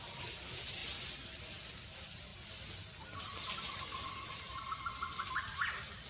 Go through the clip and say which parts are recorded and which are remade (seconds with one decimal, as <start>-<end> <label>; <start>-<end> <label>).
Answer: 0.0-6.1 recorded